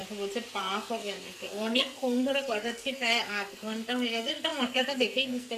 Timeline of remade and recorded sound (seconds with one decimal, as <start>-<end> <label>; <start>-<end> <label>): 0.0-0.6 recorded; 0.6-5.6 remade